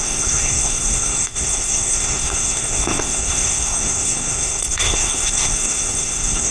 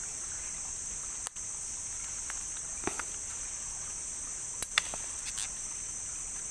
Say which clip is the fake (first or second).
first